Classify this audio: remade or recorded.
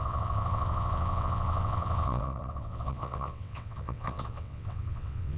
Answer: remade